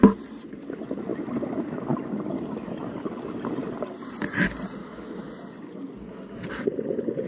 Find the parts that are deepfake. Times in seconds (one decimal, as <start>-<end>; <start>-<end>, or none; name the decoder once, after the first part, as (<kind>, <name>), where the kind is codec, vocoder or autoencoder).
4.8-5.3 (autoencoder, DAC-VAE)